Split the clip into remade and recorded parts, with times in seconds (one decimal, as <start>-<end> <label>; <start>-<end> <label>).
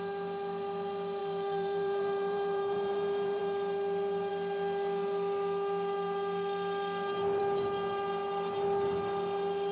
0.0-1.2 recorded; 1.2-3.4 remade; 3.4-9.7 recorded